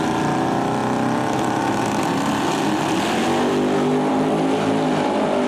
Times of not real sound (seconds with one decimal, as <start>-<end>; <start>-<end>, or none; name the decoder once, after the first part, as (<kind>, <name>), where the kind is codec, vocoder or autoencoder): none